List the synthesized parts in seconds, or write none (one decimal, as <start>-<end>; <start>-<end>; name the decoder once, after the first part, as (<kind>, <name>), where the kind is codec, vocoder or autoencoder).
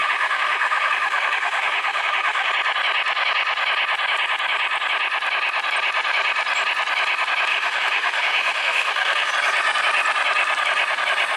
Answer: 0.0-2.5 (autoencoder, DAC-VAE); 7.5-9.3